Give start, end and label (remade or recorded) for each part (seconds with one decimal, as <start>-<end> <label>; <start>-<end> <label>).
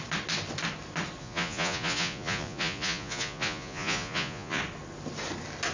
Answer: 0.0-1.2 recorded; 1.2-4.6 remade; 4.6-5.7 recorded